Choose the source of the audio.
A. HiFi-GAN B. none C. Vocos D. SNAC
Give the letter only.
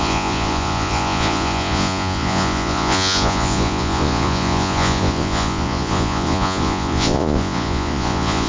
C